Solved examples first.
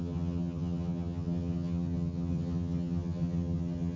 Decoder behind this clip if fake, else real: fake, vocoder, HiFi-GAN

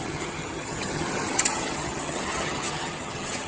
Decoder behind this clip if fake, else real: fake, vocoder, HiFi-GAN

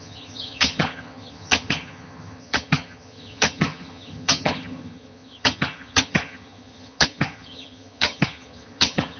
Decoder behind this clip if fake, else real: fake, vocoder, HiFi-GAN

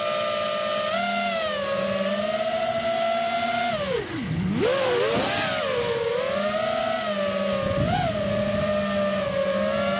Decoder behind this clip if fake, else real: real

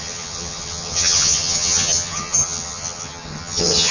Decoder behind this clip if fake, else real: fake, vocoder, HiFi-GAN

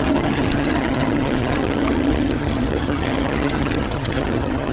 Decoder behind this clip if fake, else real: fake, vocoder, HiFi-GAN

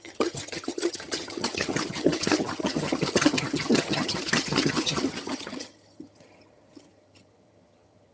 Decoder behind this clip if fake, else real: fake, vocoder, HiFi-GAN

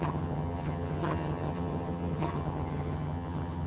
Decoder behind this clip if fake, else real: fake, vocoder, HiFi-GAN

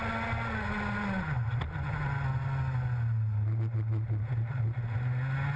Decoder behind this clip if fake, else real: real